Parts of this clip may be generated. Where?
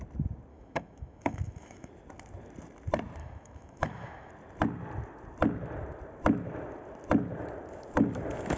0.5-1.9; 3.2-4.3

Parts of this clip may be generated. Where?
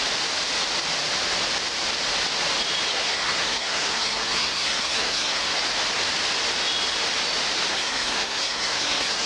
2.9-5.6; 7.7-9.3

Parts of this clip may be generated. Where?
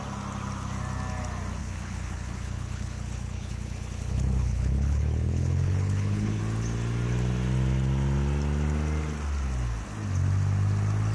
1.6-6.4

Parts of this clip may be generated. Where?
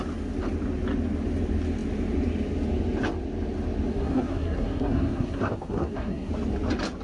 3.9-6.3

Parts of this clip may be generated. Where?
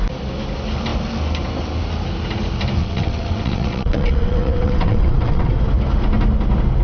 2.8-5.5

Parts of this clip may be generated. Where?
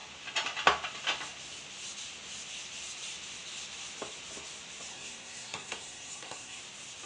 4.9-6.6